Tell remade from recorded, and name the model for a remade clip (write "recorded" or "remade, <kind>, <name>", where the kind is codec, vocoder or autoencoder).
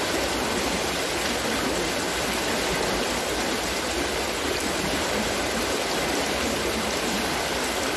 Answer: recorded